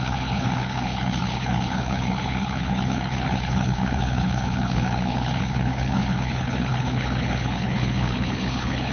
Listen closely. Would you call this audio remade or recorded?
remade